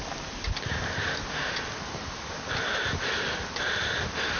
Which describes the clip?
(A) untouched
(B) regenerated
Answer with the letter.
A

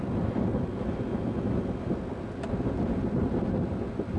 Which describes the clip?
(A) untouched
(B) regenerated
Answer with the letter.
A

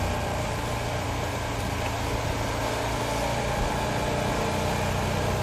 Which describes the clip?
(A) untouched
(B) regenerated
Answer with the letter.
A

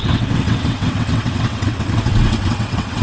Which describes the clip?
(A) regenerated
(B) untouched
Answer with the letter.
A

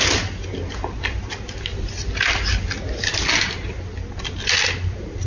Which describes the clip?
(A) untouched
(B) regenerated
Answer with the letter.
A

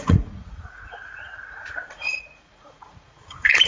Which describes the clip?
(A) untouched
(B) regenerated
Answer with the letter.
B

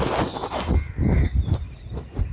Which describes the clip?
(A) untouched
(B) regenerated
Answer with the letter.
A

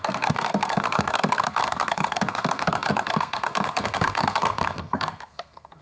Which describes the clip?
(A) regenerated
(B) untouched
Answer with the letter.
A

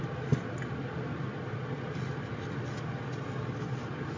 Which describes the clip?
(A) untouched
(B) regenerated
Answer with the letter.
A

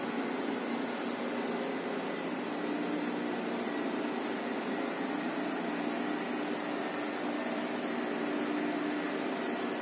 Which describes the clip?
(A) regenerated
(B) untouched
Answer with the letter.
B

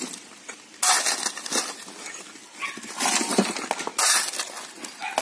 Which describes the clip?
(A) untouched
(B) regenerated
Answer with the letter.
A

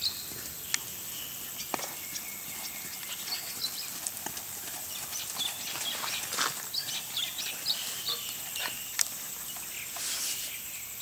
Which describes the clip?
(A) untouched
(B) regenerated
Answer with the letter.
A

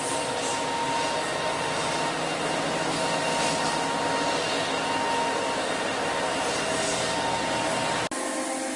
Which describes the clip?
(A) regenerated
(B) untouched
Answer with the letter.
B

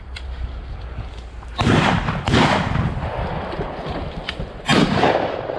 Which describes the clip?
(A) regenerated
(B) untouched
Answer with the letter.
A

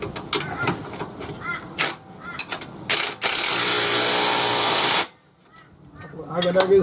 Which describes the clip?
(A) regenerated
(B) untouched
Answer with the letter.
B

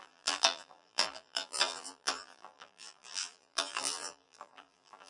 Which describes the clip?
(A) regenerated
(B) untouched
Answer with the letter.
A